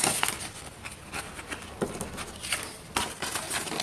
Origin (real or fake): real